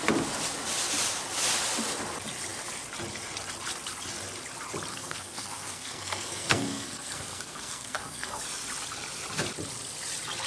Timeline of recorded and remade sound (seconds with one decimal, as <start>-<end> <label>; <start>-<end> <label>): 0.0-4.9 recorded; 4.9-8.4 remade; 8.4-10.5 recorded